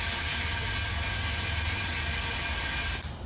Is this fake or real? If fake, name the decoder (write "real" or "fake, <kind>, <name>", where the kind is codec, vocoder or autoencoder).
real